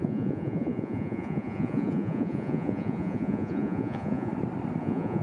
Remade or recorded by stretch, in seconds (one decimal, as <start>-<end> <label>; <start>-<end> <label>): 0.0-4.3 remade; 4.3-4.8 recorded; 4.8-5.2 remade